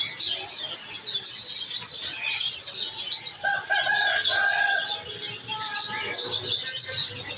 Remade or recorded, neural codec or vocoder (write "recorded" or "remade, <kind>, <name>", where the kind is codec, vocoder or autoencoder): recorded